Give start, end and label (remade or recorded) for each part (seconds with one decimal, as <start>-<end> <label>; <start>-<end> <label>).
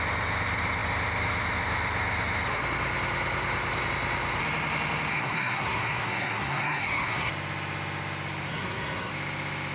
0.0-5.1 recorded; 5.1-7.3 remade; 7.3-8.5 recorded; 8.5-9.1 remade; 9.1-9.7 recorded